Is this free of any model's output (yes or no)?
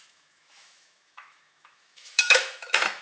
no